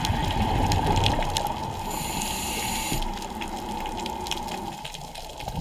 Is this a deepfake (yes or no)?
no